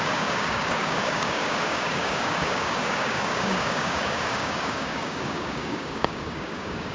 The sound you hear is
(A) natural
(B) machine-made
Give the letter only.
B